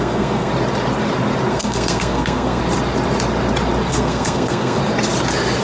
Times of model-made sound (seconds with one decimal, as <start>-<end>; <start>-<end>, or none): 0.0-0.5; 1.5-2.6; 3.9-4.8